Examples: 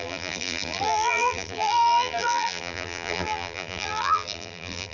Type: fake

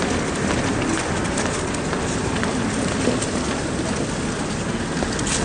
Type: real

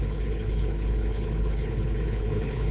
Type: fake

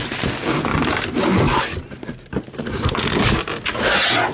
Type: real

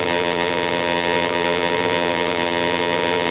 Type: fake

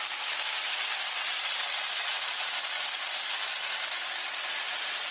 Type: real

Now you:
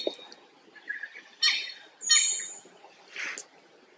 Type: real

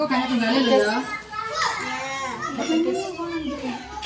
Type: real